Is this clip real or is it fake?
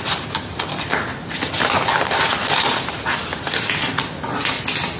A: real